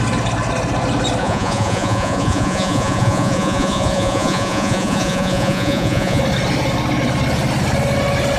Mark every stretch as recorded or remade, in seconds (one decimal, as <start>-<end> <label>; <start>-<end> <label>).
0.0-1.2 recorded; 1.2-6.2 remade; 6.2-8.4 recorded